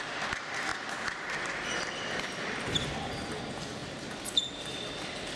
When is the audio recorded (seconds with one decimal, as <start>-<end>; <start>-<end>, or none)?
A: 0.0-5.4